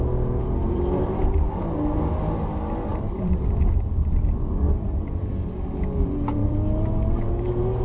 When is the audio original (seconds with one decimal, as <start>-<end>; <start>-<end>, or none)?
0.0-0.6; 1.2-2.9; 5.5-6.4; 7.2-7.8